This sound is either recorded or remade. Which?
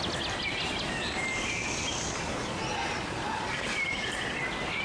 recorded